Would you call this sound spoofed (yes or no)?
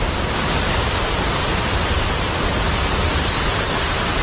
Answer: no